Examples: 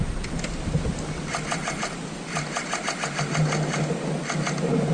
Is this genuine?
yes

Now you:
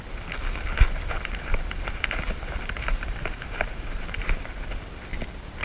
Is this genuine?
yes